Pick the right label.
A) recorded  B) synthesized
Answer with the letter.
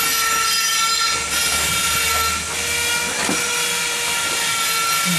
A